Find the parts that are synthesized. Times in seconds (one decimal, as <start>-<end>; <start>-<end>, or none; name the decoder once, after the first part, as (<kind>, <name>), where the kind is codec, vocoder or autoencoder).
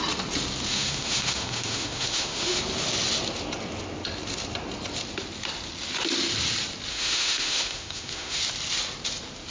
0.7-2.6 (autoencoder, DAC-VAE); 6.9-8.4